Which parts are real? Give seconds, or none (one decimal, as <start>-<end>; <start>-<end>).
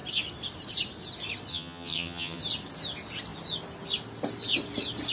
0.0-1.5; 2.4-5.1